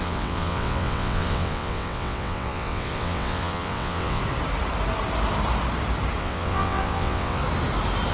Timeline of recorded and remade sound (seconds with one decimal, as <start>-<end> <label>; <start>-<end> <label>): 0.0-4.2 remade; 4.2-6.2 recorded; 6.2-7.4 remade; 7.4-8.1 recorded

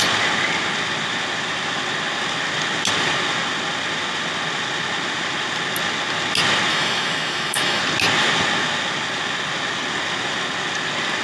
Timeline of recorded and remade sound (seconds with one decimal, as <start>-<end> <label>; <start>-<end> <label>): 0.0-6.7 recorded; 6.7-7.8 remade; 7.8-11.2 recorded

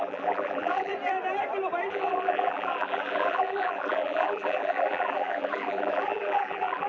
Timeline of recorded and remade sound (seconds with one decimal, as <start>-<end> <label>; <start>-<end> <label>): 0.0-0.9 remade; 0.9-1.9 recorded; 1.9-6.9 remade